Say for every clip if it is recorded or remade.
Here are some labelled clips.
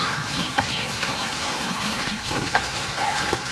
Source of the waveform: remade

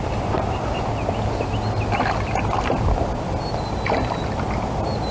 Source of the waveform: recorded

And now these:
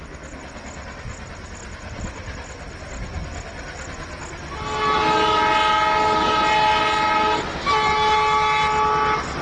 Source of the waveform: recorded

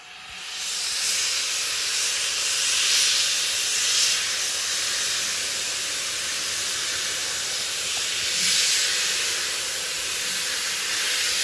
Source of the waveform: recorded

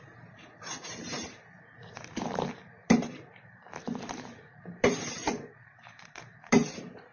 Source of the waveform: remade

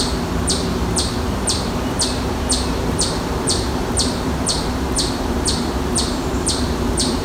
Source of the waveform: remade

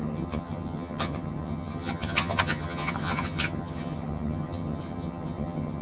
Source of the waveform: remade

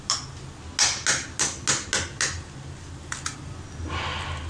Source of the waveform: recorded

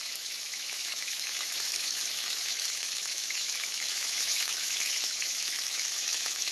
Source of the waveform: remade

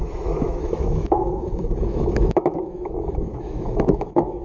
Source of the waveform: remade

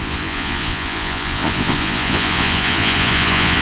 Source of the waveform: remade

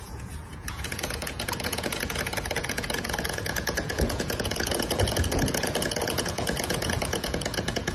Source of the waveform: remade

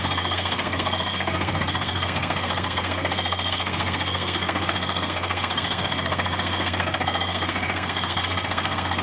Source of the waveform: remade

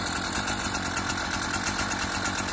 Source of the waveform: recorded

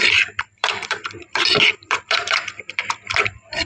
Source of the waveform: remade